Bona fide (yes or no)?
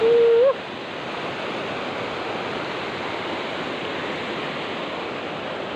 yes